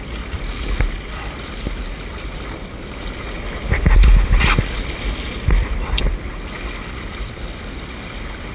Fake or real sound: real